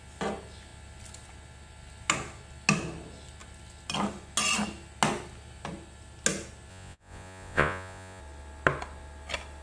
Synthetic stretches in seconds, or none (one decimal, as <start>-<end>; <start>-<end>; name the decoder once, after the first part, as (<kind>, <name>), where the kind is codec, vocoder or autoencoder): 6.7-8.2 (vocoder, Vocos)